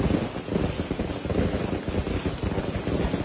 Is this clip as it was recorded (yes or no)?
yes